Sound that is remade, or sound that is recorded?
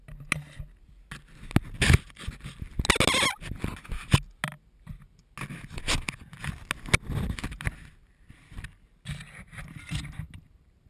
recorded